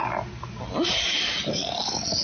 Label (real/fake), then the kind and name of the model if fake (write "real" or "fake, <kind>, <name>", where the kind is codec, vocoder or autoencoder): real